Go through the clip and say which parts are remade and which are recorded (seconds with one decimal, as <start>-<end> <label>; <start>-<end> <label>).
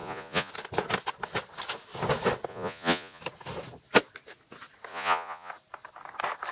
0.0-0.5 remade; 0.5-2.5 recorded; 2.5-3.2 remade; 3.2-4.9 recorded; 4.9-5.5 remade; 5.5-6.5 recorded